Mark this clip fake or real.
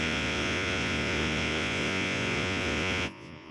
fake